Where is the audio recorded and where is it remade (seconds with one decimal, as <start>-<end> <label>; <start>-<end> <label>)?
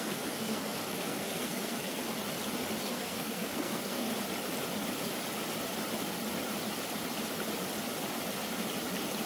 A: 0.0-2.0 remade; 2.0-2.8 recorded; 2.8-4.1 remade; 4.1-9.3 recorded